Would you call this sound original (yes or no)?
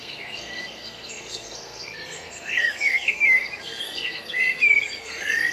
no